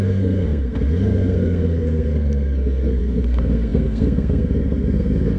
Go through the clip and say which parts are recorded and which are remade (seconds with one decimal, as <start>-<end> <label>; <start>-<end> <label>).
0.0-5.4 remade